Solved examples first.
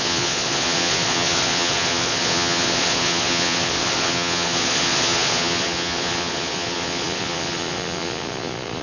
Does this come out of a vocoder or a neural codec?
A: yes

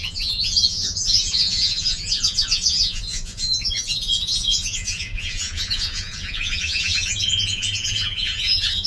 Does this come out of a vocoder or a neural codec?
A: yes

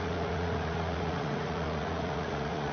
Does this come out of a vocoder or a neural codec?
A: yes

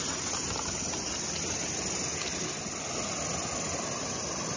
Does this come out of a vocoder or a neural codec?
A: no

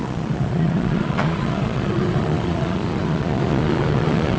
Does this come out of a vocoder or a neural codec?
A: yes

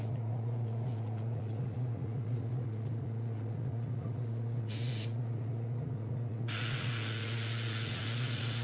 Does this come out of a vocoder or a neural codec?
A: yes